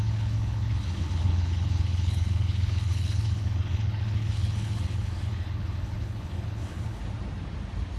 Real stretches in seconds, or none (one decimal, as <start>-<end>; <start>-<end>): 7.0-8.0